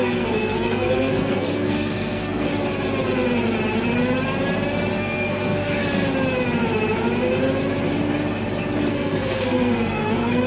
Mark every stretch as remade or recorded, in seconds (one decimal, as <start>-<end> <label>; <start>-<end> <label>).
0.0-2.5 remade; 2.5-4.9 recorded; 4.9-5.8 remade; 5.8-8.9 recorded; 8.9-10.5 remade